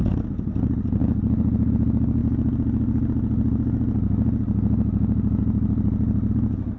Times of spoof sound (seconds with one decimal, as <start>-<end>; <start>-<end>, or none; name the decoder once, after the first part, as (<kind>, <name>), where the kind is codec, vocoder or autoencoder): 1.0-1.7 (vocoder, BigVGAN v2)